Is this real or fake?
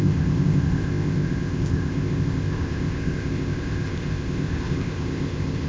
fake